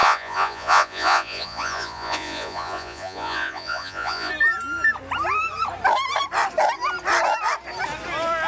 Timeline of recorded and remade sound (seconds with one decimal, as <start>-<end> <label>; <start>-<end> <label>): 0.0-4.3 remade; 4.3-8.5 recorded